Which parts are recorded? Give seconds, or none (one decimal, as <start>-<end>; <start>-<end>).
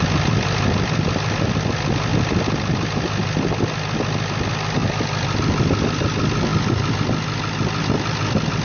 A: 0.0-8.6